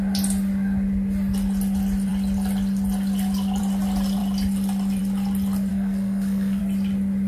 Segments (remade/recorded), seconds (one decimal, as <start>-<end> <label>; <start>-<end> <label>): 0.0-5.7 recorded; 5.7-6.6 remade; 6.6-7.3 recorded